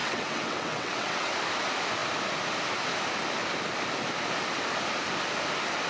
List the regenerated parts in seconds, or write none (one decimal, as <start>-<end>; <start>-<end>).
0.0-1.3